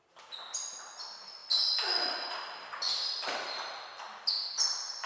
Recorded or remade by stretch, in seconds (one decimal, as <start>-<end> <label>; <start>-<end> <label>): 0.0-5.1 recorded